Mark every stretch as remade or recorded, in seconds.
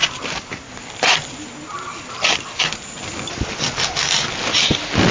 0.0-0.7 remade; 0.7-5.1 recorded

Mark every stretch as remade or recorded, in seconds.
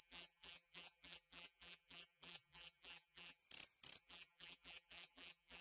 0.0-3.4 remade; 3.4-4.0 recorded; 4.0-5.6 remade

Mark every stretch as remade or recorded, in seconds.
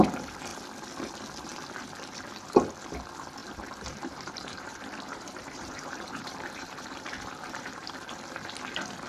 0.0-3.4 recorded; 3.4-7.9 remade; 7.9-9.1 recorded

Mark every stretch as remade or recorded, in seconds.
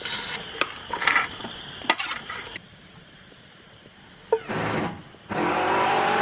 0.0-0.4 remade; 0.4-1.4 recorded; 1.4-3.8 remade; 3.8-5.5 recorded; 5.5-6.2 remade